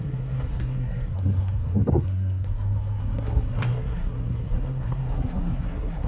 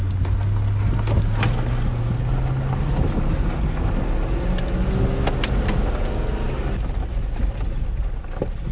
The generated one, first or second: first